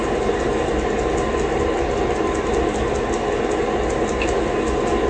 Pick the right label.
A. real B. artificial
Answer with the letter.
A